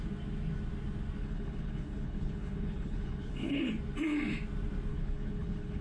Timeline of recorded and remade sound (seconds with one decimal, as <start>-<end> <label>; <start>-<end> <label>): 0.0-1.2 recorded; 1.2-3.7 remade; 3.7-4.9 recorded; 4.9-5.8 remade